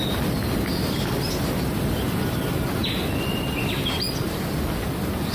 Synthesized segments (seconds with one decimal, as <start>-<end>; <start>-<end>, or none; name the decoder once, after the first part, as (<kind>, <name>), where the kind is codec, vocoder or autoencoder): none